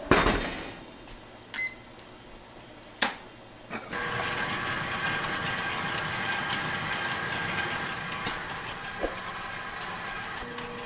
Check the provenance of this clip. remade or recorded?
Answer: recorded